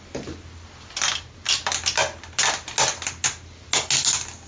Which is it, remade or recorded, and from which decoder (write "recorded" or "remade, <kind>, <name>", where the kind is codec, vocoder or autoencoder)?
recorded